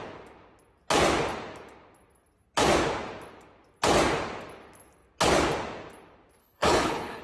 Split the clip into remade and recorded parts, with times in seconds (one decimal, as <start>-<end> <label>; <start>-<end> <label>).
0.0-6.4 recorded; 6.4-7.2 remade